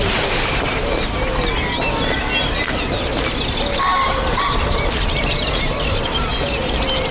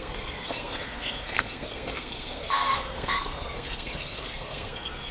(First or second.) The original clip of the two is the first